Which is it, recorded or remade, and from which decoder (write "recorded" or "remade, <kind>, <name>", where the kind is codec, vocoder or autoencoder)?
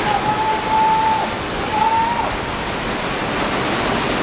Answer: recorded